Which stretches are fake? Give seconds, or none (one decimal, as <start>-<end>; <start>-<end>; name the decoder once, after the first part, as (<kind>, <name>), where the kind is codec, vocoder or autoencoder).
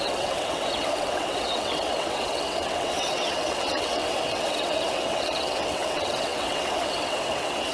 0.0-7.7 (vocoder, WaveNeXt)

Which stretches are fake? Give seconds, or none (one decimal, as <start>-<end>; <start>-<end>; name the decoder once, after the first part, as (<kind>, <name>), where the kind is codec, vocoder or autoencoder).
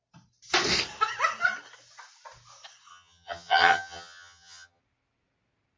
2.9-4.8 (vocoder, HiFi-GAN)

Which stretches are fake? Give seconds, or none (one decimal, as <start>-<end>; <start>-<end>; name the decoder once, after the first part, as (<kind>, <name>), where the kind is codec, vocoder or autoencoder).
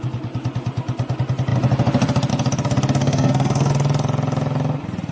3.0-3.7 (codec, SNAC)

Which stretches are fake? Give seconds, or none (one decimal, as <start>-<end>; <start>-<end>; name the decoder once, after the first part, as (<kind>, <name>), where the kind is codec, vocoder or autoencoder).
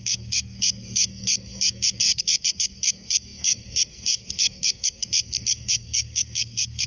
0.0-6.9 (codec, SNAC)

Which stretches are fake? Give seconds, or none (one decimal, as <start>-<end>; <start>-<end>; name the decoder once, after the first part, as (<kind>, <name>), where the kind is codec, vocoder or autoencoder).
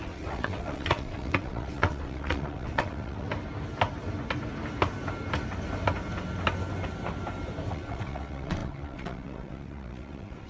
0.0-3.3 (vocoder, WaveNeXt); 7.7-10.5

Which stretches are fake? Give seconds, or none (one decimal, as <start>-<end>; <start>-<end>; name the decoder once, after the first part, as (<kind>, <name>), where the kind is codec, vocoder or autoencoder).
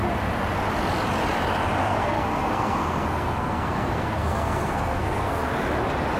1.8-5.5 (codec, SNAC)